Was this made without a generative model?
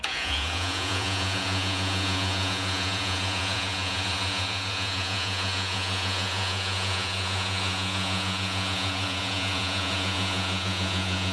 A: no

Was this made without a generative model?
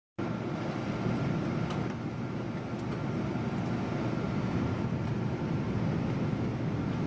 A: yes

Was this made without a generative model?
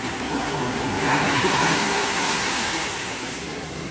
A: no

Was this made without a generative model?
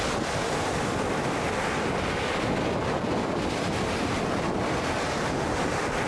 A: yes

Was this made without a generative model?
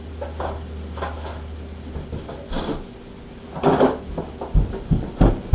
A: yes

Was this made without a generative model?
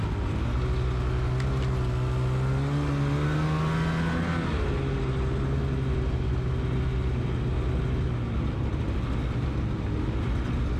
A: yes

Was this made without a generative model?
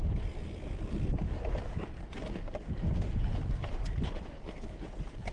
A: yes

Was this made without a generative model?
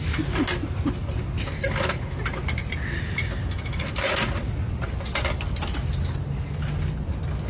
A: yes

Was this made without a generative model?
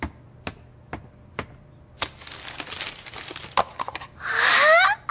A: yes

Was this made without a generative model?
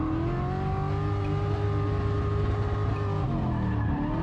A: yes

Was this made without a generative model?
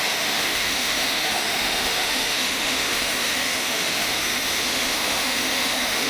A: no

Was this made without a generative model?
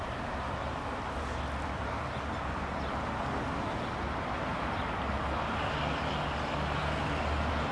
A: yes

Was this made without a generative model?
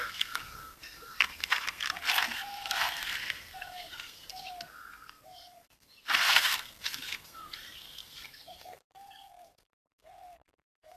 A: no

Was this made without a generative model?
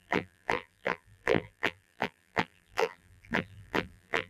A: no